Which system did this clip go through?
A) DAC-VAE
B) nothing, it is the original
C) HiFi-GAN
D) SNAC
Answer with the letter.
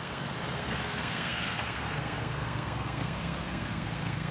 D